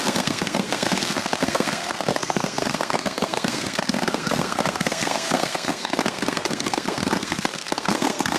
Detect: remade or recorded remade